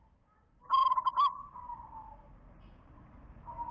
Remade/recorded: remade